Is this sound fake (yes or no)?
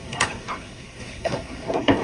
yes